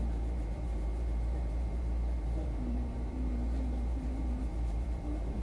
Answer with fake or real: fake